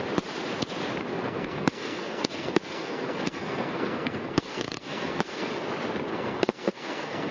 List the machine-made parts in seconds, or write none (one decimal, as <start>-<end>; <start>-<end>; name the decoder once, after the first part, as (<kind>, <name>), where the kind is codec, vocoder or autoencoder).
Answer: 1.1-5.5 (codec, SNAC); 6.1-7.3